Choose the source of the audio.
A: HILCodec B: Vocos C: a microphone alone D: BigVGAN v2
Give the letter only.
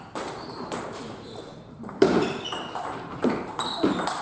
D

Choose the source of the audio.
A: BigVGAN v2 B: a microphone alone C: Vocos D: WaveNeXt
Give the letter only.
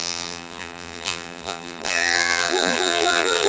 A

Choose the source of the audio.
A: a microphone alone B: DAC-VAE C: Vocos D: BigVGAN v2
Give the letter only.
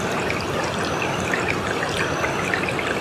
A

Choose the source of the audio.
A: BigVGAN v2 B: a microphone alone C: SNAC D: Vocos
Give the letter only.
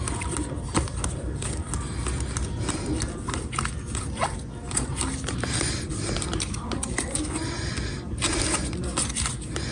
B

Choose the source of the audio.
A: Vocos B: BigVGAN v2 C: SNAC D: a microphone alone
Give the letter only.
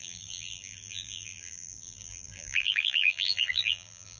B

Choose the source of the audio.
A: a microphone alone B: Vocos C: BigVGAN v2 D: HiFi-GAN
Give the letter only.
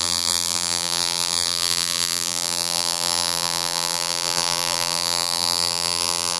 C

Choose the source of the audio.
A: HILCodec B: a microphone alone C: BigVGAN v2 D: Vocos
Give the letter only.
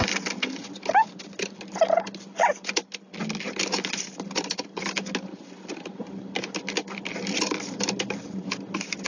B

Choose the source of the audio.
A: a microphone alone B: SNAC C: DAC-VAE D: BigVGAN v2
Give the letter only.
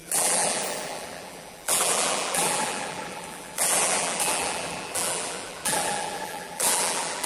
D